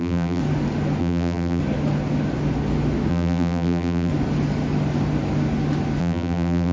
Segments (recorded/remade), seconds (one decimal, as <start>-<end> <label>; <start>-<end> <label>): 0.0-0.4 remade; 0.4-1.0 recorded; 1.0-1.6 remade; 1.6-3.1 recorded; 3.1-4.1 remade; 4.1-6.0 recorded; 6.0-6.7 remade

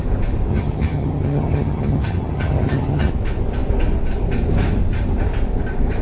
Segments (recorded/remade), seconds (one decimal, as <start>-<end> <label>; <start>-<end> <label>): 0.0-0.5 recorded; 0.5-3.1 remade; 3.1-6.0 recorded